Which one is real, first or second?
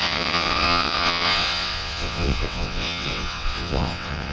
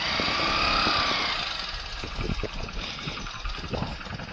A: second